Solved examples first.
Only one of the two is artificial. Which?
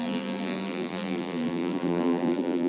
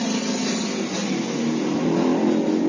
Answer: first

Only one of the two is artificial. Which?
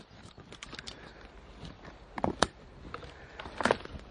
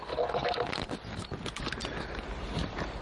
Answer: first